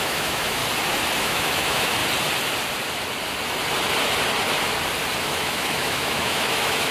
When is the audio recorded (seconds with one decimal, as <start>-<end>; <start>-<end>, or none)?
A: 0.6-1.2; 2.0-5.2